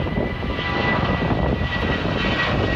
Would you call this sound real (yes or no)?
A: yes